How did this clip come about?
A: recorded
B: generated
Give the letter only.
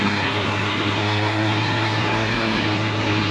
B